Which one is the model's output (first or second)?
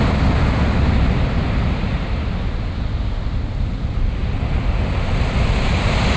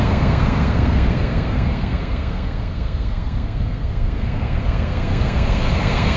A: second